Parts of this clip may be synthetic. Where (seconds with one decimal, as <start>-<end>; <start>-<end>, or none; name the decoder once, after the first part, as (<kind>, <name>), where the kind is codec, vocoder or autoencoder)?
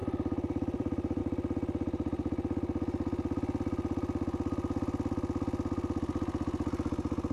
0.0-1.2 (vocoder, BigVGAN v2)